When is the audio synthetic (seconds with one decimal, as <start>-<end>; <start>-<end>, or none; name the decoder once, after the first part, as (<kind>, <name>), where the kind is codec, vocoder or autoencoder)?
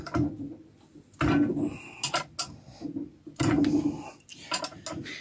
none